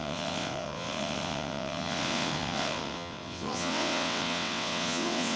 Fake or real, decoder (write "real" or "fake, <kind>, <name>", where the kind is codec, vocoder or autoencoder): fake, vocoder, WaveNeXt